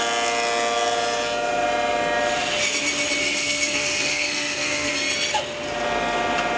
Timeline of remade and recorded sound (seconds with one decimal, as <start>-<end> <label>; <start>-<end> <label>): 0.0-3.2 recorded; 3.2-4.9 remade; 4.9-6.6 recorded